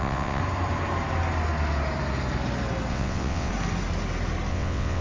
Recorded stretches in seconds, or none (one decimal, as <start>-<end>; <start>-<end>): 0.4-2.9; 3.5-4.5